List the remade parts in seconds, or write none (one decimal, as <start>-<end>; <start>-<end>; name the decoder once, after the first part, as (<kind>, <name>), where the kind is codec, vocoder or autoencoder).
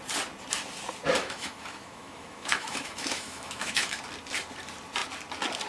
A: 1.2-4.0 (autoencoder, DAC-VAE)